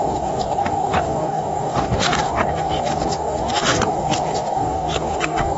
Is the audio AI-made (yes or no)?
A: yes